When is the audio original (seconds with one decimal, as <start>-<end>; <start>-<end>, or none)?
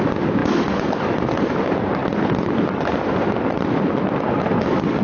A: 0.0-2.0